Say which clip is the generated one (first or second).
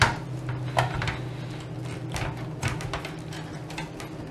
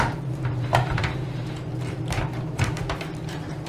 second